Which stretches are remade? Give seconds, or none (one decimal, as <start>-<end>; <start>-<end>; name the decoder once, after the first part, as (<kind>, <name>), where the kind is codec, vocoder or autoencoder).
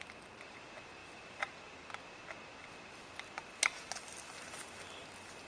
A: none